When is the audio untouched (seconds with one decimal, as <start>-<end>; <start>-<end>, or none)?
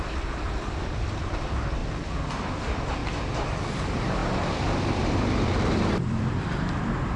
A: 1.8-2.3; 3.0-3.7